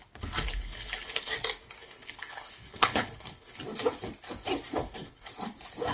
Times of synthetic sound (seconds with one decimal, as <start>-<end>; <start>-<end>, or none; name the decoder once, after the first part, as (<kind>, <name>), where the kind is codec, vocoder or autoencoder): 0.5-1.3 (codec, HILCodec); 1.8-3.6; 4.7-5.3

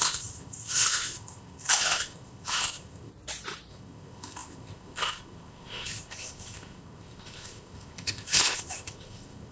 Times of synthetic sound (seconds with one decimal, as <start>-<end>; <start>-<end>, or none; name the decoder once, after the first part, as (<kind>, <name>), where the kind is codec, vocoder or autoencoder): 0.0-3.1 (codec, ZipCodec); 3.7-9.5

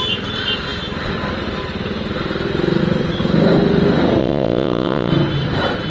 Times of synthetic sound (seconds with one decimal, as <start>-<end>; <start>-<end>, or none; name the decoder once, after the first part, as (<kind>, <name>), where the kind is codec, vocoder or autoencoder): 4.2-5.1 (vocoder, WaveNeXt)

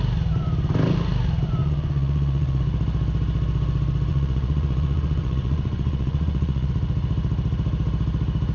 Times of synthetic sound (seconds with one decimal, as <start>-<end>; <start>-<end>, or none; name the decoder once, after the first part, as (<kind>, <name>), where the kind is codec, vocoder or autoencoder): 1.6-2.6 (vocoder, Vocos); 4.1-6.7